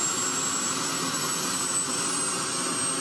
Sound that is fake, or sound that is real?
real